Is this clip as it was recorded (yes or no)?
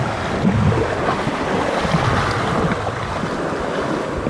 yes